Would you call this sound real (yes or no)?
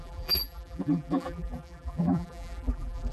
no